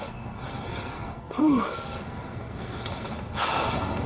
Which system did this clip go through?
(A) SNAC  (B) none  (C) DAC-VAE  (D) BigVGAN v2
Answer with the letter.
A